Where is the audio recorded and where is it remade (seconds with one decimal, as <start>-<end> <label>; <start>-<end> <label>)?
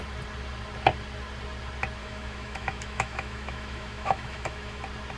0.0-2.0 recorded; 2.0-4.8 remade; 4.8-5.2 recorded